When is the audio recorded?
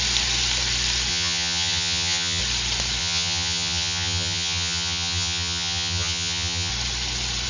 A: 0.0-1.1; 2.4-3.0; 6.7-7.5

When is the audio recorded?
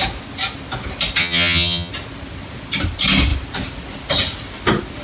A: 0.0-1.2; 1.9-5.0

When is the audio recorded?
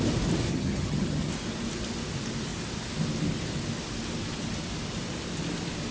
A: 0.0-0.5; 1.3-5.9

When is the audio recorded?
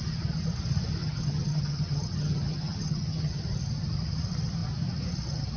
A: 0.0-1.0; 3.4-5.6